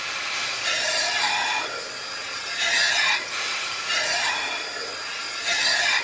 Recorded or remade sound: recorded